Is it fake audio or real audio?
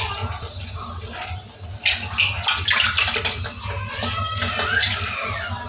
real